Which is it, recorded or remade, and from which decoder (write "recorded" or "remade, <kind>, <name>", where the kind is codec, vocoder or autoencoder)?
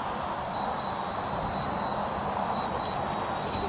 recorded